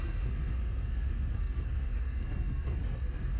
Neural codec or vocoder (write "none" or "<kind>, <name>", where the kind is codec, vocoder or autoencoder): codec, SNAC